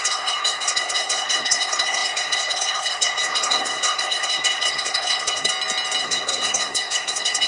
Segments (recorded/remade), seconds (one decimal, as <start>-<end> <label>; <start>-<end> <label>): 0.0-5.5 remade; 5.5-6.0 recorded; 6.0-7.5 remade